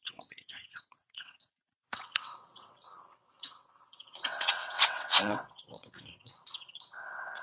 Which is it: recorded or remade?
remade